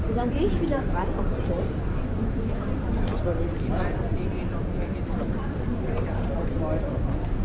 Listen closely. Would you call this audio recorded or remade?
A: remade